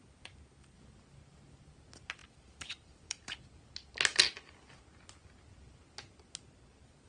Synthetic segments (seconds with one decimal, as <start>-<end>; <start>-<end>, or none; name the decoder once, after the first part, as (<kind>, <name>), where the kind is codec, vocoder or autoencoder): 2.2-3.4 (vocoder, BigVGAN v2); 4.1-4.8